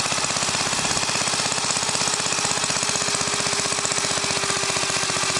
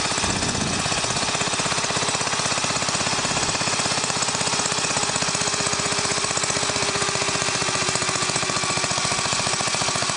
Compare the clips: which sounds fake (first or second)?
second